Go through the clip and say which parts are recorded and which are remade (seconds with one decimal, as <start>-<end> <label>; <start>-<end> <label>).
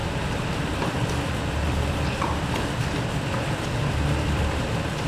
0.0-5.1 remade